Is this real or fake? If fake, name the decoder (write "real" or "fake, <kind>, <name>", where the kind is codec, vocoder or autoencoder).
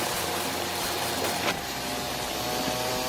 real